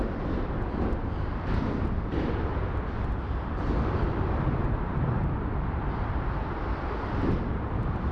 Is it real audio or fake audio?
fake